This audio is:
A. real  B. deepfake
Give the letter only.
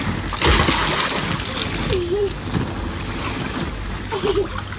A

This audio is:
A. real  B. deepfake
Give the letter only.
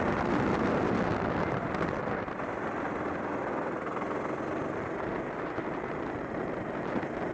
A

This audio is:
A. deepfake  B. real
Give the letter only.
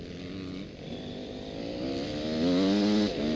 B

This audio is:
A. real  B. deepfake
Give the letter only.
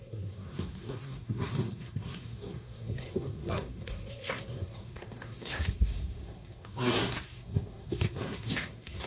B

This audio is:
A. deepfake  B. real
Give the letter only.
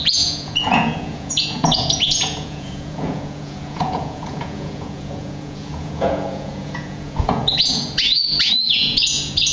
A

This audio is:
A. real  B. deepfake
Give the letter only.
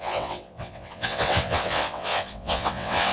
B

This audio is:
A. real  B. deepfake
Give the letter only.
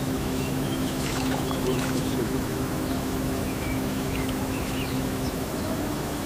B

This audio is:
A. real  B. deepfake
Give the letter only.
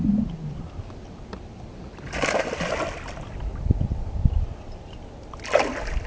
A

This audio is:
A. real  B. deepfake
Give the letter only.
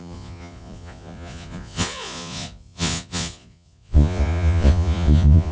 B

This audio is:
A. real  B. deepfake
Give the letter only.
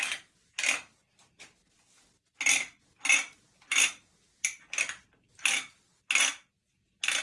A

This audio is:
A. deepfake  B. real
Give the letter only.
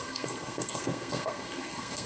A